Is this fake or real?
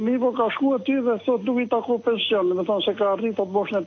real